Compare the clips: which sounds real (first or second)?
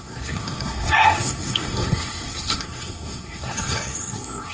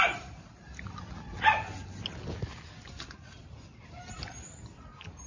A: second